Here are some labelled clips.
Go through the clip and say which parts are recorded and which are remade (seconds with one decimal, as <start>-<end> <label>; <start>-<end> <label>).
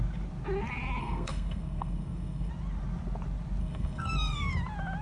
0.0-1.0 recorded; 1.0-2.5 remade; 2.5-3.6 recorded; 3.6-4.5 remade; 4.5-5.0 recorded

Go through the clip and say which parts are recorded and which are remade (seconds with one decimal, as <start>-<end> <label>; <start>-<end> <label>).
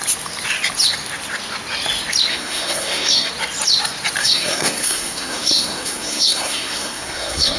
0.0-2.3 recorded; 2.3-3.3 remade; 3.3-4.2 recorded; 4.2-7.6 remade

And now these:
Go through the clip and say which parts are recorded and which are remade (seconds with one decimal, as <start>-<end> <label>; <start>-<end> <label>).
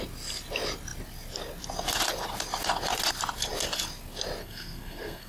0.0-4.4 recorded; 4.4-5.3 remade